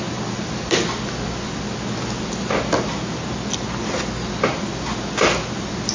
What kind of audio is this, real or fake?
real